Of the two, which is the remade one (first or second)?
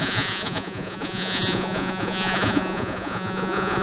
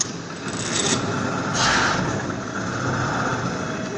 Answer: first